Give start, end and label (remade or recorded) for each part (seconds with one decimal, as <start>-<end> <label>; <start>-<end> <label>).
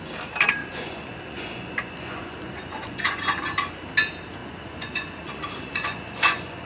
0.0-0.6 recorded; 0.6-3.4 remade; 3.4-4.4 recorded; 4.4-6.7 remade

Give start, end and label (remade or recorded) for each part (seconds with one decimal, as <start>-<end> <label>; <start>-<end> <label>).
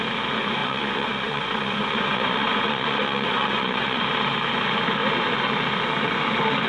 0.0-0.6 recorded; 0.6-4.0 remade; 4.0-6.7 recorded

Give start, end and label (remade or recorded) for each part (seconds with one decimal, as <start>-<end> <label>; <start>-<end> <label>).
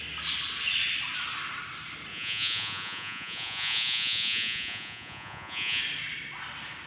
0.0-2.1 recorded; 2.1-5.8 remade; 5.8-6.9 recorded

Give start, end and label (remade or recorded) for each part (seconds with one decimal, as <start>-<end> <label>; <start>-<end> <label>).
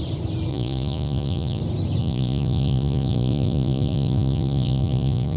0.0-0.5 recorded; 0.5-1.6 remade; 1.6-2.0 recorded; 2.0-5.4 remade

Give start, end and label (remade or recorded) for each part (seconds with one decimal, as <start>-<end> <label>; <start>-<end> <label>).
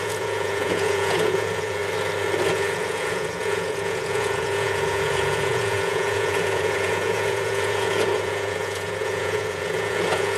0.0-1.8 remade; 1.8-2.5 recorded; 2.5-10.4 remade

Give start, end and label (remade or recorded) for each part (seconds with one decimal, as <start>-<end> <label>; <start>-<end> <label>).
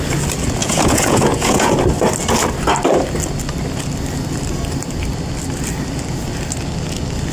0.0-0.6 recorded; 0.6-1.7 remade; 1.7-7.3 recorded